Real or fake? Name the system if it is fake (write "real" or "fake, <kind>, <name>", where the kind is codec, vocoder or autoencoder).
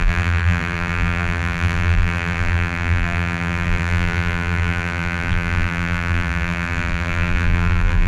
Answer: fake, vocoder, BigVGAN v2